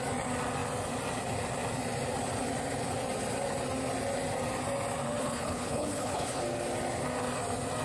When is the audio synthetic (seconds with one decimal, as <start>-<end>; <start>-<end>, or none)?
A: 5.2-6.4